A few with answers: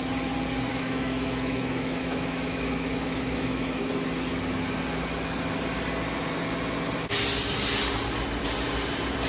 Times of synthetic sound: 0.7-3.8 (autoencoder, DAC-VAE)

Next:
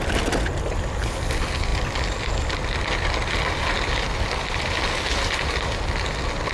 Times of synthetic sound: none

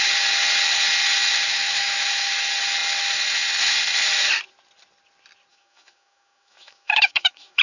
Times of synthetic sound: 1.5-2.3 (autoencoder, DAC-VAE); 5.5-7.6